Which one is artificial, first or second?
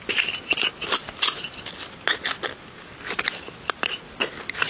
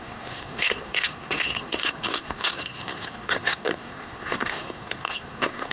second